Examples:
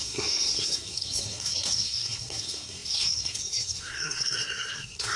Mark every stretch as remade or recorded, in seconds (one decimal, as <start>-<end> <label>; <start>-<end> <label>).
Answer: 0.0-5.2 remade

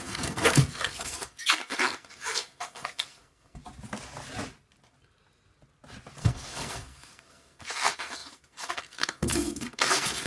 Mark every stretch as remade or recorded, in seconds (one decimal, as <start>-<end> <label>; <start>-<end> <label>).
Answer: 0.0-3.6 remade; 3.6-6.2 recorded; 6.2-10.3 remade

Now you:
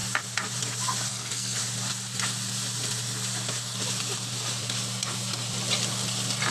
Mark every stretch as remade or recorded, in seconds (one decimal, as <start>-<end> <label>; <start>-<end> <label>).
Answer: 0.0-1.1 recorded; 1.1-1.6 remade; 1.6-6.5 recorded

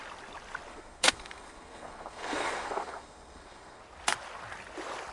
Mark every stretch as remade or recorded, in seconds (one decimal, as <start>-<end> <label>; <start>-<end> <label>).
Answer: 0.0-0.7 recorded; 0.7-3.8 remade; 3.8-5.1 recorded

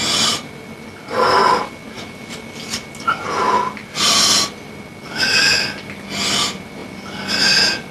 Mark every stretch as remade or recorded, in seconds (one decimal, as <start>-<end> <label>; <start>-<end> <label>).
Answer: 0.0-7.9 recorded

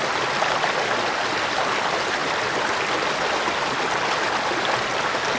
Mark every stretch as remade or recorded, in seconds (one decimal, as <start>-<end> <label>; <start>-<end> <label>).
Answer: 0.0-5.4 recorded